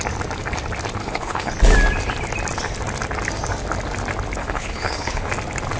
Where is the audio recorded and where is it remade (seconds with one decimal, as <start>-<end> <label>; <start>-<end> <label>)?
0.0-1.0 recorded; 1.0-1.5 remade; 1.5-4.4 recorded; 4.4-5.3 remade; 5.3-5.8 recorded